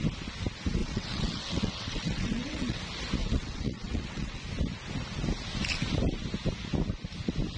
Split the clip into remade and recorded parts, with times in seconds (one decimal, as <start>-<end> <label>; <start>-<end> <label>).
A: 0.0-0.8 recorded; 0.8-2.8 remade; 2.8-3.2 recorded; 3.2-4.4 remade; 4.4-7.6 recorded